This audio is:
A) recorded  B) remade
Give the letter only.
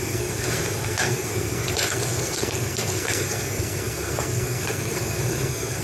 B